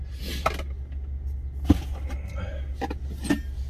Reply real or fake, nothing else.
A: real